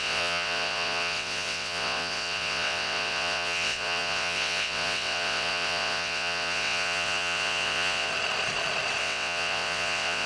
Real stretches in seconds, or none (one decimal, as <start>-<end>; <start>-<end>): 8.1-9.0